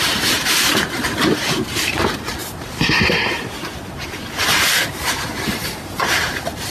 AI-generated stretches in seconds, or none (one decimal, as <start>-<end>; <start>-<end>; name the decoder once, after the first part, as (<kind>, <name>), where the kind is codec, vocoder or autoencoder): 0.0-6.7 (vocoder, BigVGAN v2)